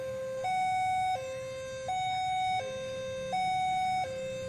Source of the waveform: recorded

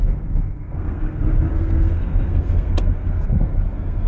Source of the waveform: remade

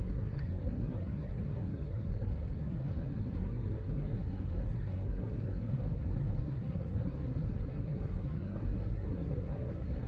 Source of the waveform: remade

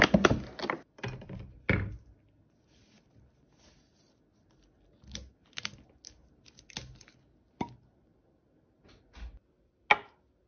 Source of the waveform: recorded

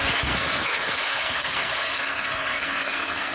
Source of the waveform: remade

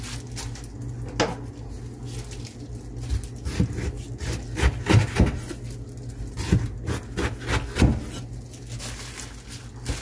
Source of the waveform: recorded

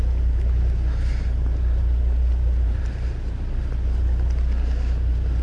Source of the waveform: recorded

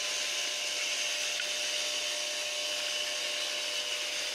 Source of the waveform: recorded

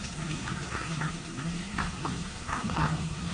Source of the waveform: remade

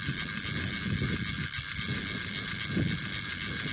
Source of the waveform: recorded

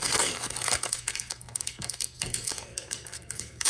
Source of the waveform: remade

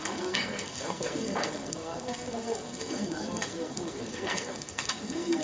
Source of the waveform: remade